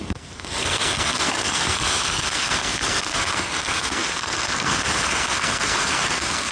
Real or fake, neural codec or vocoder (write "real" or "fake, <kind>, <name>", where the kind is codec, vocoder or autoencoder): fake, codec, SNAC